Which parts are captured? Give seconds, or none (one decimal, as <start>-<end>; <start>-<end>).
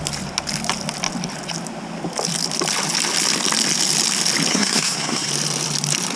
0.0-4.5; 5.3-6.2